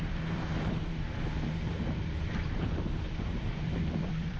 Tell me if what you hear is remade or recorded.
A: remade